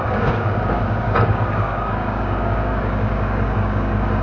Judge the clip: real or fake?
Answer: fake